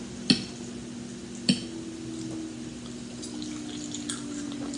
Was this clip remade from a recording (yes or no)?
no